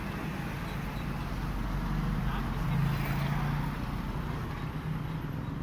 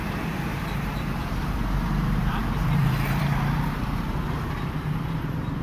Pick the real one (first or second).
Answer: first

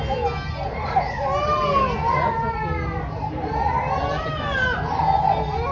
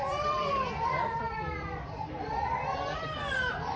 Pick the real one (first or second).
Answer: first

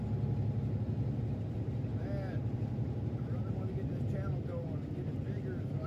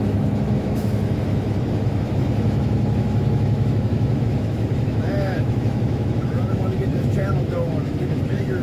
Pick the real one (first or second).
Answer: first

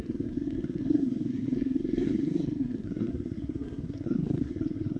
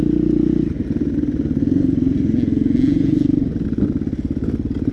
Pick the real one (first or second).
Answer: second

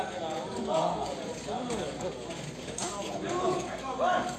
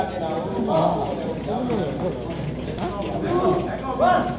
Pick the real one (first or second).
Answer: second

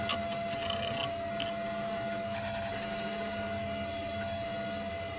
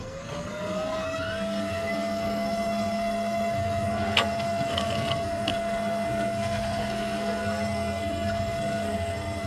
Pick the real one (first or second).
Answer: first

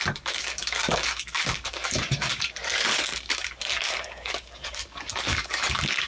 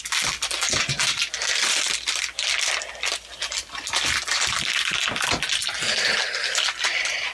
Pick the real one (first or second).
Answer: second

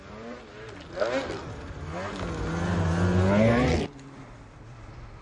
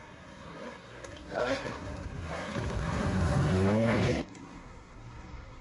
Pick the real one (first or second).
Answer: first